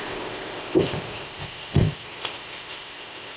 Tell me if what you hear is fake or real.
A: fake